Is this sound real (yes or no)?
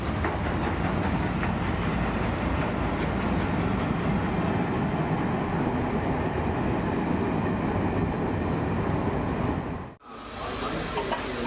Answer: yes